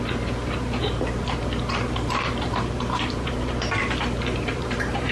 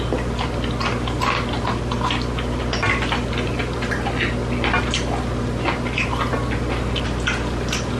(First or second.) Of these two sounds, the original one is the second